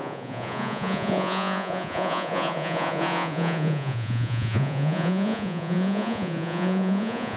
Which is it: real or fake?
fake